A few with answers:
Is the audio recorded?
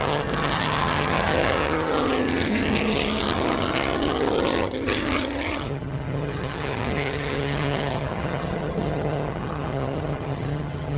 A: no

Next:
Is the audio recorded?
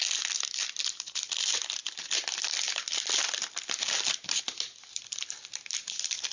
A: yes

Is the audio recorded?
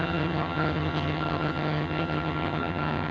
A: no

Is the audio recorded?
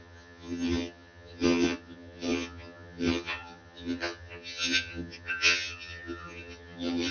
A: no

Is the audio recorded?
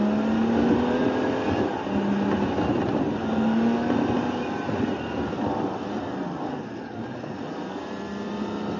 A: yes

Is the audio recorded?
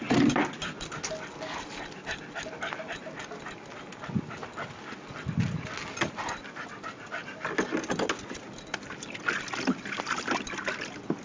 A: yes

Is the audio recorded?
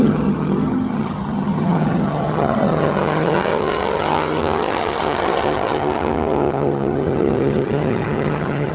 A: no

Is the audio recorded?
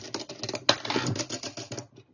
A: yes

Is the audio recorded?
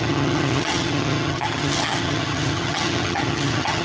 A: no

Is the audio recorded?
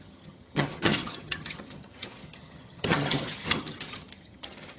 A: no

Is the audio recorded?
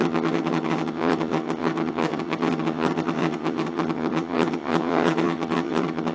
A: no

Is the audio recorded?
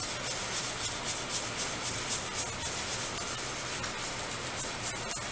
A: yes